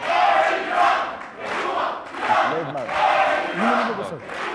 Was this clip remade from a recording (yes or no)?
no